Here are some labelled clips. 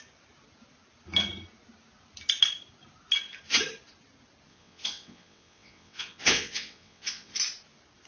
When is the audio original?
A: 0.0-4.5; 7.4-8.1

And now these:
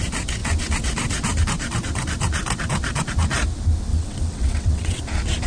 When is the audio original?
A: 0.0-3.9; 5.0-5.5

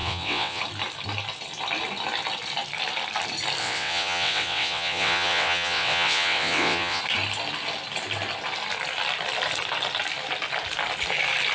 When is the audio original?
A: 0.6-3.6; 7.0-11.5

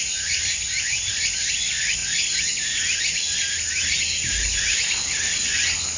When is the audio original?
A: 0.0-6.0

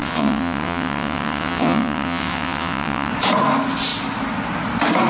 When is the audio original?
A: 3.1-5.1

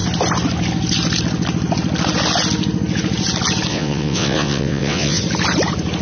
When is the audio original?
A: 0.0-3.7; 5.2-6.0

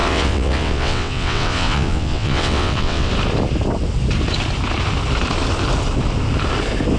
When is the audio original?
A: 3.1-7.0

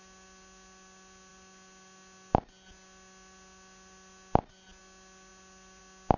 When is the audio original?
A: 0.0-6.2